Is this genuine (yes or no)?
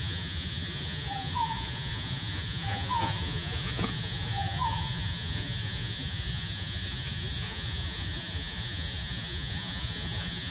no